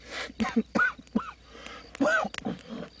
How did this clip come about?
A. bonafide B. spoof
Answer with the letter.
A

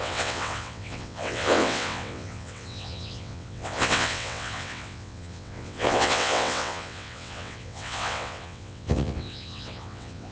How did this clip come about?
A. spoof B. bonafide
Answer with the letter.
A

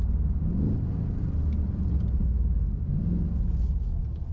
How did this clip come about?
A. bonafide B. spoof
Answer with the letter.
A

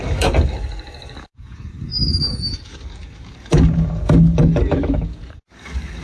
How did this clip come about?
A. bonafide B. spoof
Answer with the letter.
B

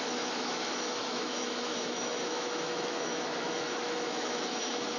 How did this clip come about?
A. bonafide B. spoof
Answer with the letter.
B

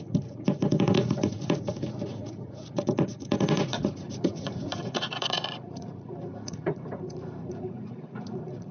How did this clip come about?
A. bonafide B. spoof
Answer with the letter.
B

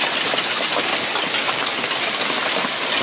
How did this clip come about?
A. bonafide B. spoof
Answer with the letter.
A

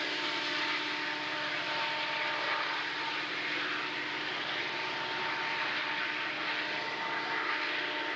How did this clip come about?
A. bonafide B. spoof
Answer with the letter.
A